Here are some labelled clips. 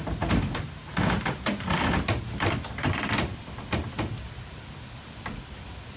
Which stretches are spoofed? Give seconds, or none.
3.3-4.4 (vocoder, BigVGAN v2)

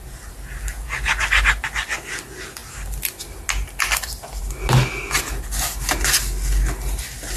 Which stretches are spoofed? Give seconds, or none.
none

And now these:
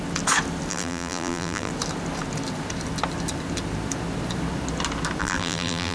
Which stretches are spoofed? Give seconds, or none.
0.7-1.7 (vocoder, BigVGAN v2); 5.2-5.9

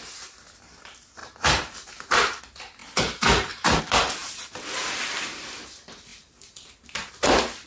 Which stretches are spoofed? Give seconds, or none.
1.2-2.4 (vocoder, BigVGAN v2); 2.8-3.8; 4.2-5.0; 6.1-7.1

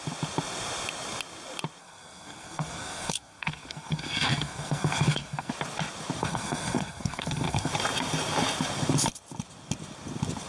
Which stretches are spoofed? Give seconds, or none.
1.8-5.5 (codec, SNAC); 6.2-7.7

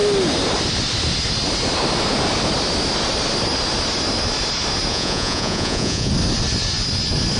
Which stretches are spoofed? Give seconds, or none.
4.9-6.1 (vocoder, Vocos)

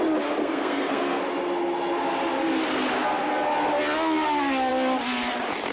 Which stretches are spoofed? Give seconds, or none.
0.4-1.2 (codec, SNAC)